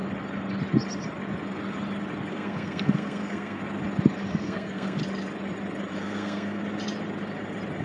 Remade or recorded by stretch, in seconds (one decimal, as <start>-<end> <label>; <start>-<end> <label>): 0.0-2.3 recorded; 2.3-3.6 remade; 3.6-4.3 recorded; 4.3-5.0 remade; 5.0-6.0 recorded; 6.0-6.6 remade; 6.6-7.8 recorded